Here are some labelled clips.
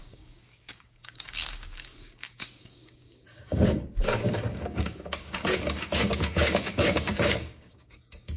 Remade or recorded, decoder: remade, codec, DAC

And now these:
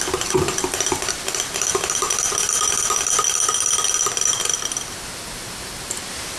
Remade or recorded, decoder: recorded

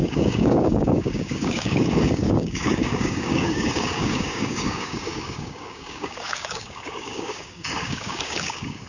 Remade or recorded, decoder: remade, codec, DAC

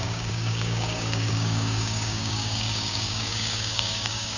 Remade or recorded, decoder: remade, codec, DAC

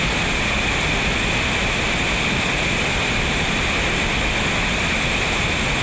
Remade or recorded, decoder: recorded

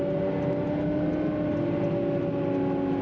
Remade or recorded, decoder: recorded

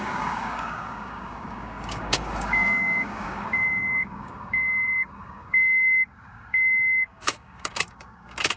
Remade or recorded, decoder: remade, codec, DAC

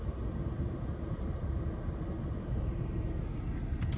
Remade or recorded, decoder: recorded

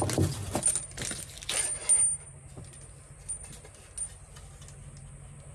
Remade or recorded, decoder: recorded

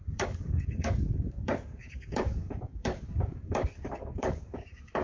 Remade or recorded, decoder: remade, codec, DAC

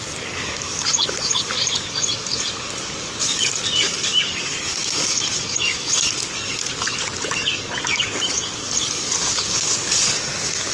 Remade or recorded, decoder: remade, codec, DAC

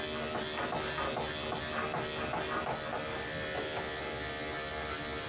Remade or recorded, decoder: recorded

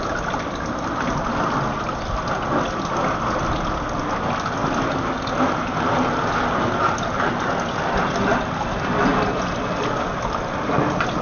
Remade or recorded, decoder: recorded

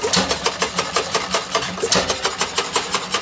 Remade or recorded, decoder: recorded